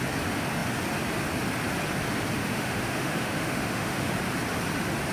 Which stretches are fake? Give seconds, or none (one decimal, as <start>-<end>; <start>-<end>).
2.4-4.1